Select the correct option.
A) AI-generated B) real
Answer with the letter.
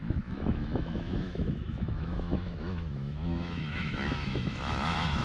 A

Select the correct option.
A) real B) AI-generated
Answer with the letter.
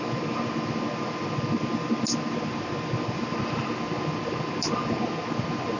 A